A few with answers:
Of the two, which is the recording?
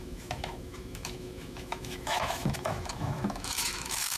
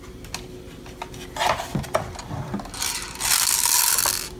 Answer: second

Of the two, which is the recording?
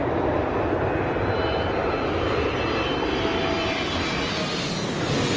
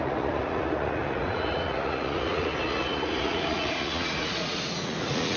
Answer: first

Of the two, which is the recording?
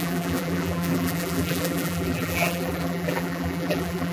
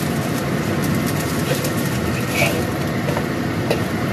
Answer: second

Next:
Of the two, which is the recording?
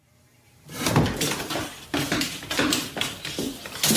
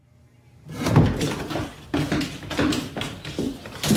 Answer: second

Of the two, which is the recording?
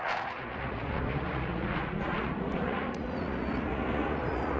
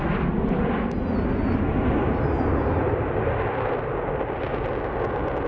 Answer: second